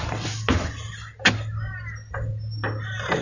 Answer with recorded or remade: recorded